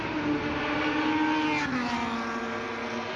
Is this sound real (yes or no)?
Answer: yes